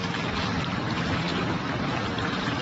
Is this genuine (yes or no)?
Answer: yes